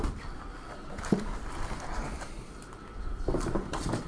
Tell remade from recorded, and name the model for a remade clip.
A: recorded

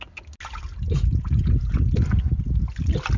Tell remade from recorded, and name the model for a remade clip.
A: recorded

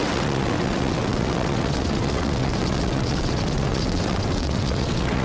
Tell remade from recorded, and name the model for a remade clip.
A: remade, vocoder, WaveNeXt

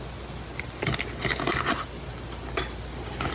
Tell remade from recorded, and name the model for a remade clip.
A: recorded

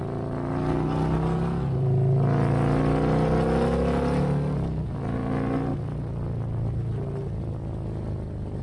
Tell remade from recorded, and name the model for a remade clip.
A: recorded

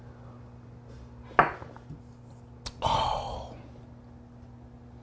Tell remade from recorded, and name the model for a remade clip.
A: recorded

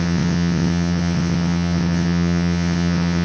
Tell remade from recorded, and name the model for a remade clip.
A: remade, vocoder, WaveNeXt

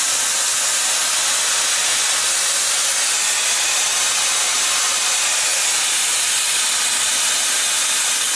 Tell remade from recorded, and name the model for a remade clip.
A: recorded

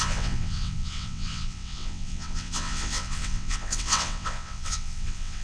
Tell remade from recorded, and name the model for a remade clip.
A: remade, vocoder, WaveNeXt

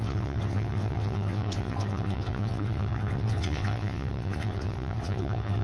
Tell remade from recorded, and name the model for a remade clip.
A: remade, vocoder, WaveNeXt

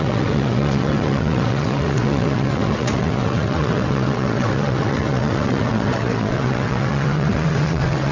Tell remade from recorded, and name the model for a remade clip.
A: remade, vocoder, WaveNeXt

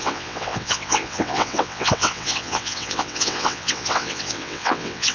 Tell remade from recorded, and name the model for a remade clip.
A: remade, vocoder, WaveNeXt